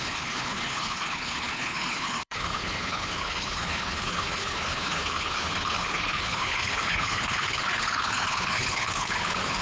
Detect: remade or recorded remade